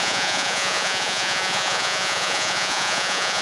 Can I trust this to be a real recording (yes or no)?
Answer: no